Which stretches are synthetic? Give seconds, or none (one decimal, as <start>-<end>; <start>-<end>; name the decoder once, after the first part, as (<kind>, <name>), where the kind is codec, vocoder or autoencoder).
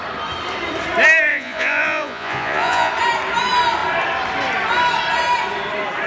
1.3-2.9 (vocoder, Vocos)